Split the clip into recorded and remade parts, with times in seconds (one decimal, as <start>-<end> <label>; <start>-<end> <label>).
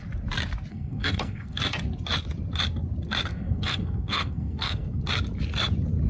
0.0-0.7 recorded; 0.7-1.6 remade; 1.6-3.3 recorded; 3.3-5.0 remade; 5.0-6.1 recorded